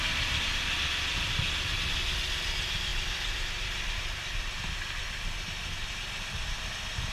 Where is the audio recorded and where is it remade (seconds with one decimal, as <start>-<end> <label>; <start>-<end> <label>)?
0.0-7.1 recorded